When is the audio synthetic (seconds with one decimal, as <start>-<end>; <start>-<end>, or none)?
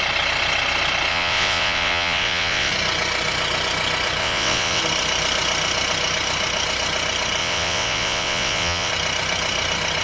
1.1-2.7; 4.2-4.8; 7.4-8.9